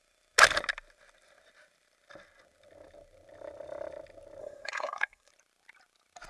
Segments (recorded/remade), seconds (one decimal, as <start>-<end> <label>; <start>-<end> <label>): 0.0-4.4 recorded; 4.4-5.3 remade; 5.3-6.3 recorded